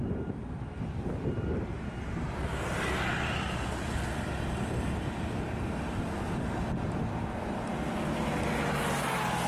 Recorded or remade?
recorded